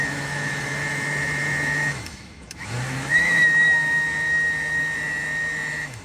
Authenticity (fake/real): fake